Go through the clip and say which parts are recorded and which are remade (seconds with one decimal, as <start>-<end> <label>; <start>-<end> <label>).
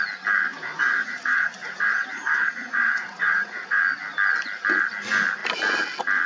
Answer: 0.0-0.5 recorded; 0.5-3.8 remade; 3.8-6.3 recorded